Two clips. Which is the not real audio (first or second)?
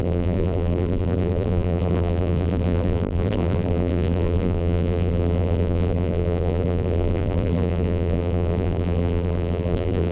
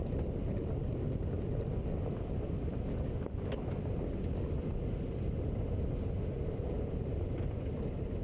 first